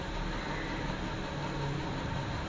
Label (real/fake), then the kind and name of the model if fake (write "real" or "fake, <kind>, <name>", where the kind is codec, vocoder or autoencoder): real